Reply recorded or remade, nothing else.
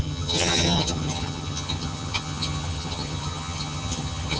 remade